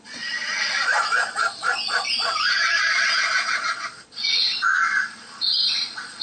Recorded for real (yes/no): no